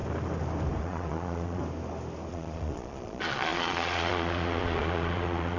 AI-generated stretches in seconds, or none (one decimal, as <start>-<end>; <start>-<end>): 0.8-1.6; 2.3-5.6